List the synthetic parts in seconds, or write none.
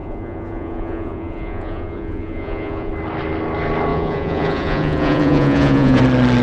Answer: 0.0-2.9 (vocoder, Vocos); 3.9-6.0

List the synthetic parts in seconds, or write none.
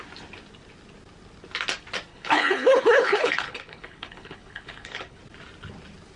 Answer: 2.1-5.2 (codec, HILCodec)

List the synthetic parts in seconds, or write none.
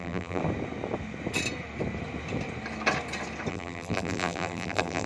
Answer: 0.0-0.4 (vocoder, BigVGAN v2); 3.5-5.1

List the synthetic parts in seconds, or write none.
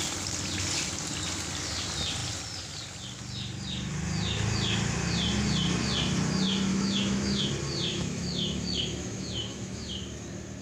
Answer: 6.7-7.5 (autoencoder, DAC-VAE); 7.9-9.9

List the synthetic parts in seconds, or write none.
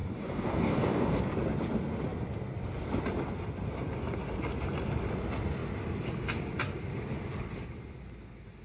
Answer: 0.0-1.2 (codec, DAC)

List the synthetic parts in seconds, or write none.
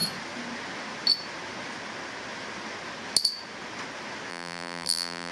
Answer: 4.3-5.3 (vocoder, BigVGAN v2)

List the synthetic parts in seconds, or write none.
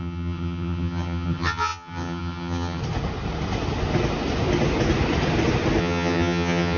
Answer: 0.0-2.8 (vocoder, HiFi-GAN); 5.8-6.8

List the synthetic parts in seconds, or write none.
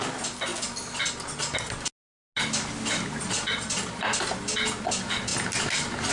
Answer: none